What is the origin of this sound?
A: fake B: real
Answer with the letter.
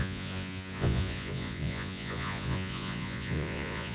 A